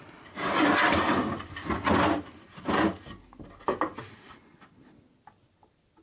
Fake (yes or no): no